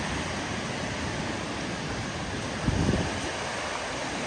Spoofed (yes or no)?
no